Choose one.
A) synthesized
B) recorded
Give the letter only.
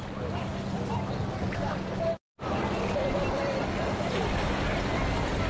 B